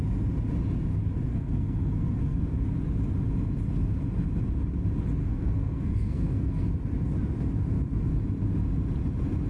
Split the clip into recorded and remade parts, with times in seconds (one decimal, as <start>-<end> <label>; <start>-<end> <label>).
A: 0.0-1.3 recorded; 1.3-2.4 remade; 2.4-5.2 recorded; 5.2-6.7 remade; 6.7-9.5 recorded